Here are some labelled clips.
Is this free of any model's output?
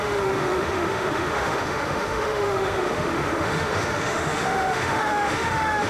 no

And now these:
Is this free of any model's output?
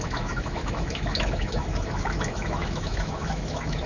no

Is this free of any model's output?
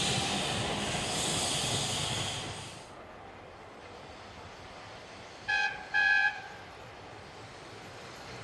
yes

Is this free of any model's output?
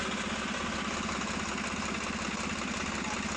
yes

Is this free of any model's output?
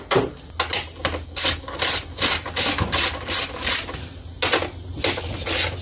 yes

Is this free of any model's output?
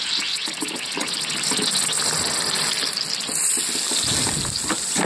yes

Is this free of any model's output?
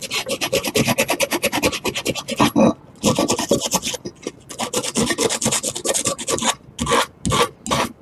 yes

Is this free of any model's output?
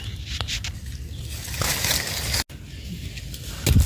yes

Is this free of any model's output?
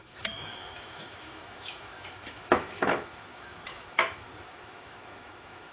no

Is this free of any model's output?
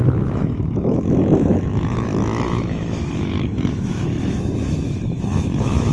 no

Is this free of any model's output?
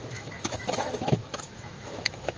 no